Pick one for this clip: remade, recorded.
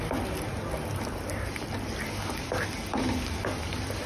recorded